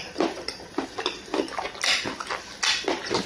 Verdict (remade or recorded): recorded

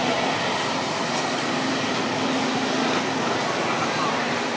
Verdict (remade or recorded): recorded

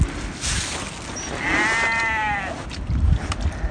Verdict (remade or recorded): recorded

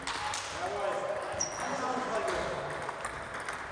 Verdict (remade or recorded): recorded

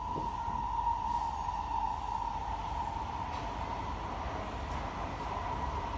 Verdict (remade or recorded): recorded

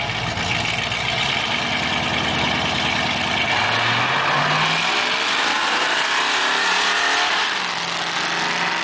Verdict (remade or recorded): recorded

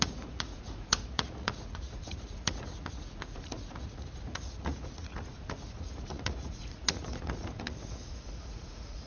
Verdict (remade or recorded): remade